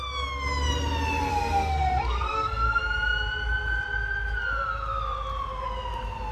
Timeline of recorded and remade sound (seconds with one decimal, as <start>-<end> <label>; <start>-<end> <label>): 0.0-1.3 recorded; 1.3-2.8 remade; 2.8-6.3 recorded